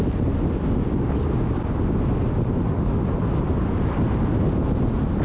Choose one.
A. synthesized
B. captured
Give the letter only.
B